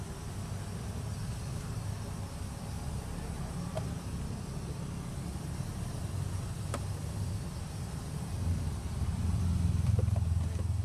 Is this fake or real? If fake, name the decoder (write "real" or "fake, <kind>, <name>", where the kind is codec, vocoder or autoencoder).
real